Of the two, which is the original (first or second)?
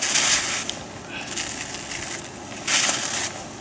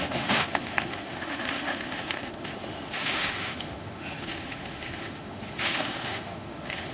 first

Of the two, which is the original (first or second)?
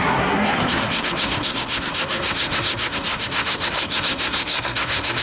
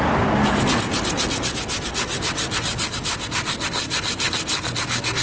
second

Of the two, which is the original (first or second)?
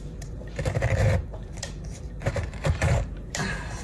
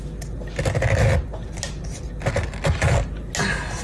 second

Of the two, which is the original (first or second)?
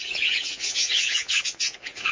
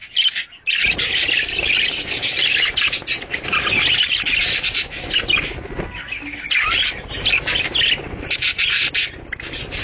second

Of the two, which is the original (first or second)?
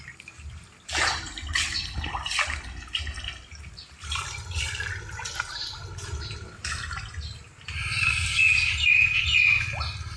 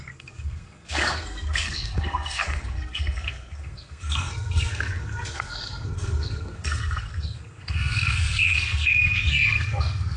first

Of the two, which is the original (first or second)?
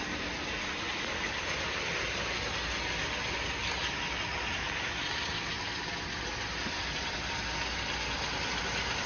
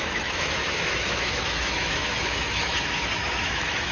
first